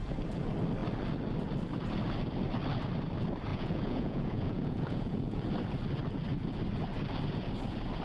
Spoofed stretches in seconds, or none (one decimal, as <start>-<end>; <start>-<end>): 3.5-5.5